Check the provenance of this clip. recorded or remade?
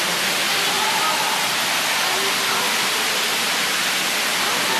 recorded